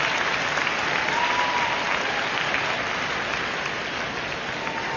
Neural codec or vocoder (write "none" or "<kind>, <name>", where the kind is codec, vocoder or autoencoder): none